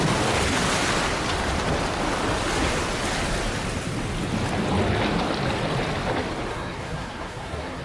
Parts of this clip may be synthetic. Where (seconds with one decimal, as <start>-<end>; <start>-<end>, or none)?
6.5-7.8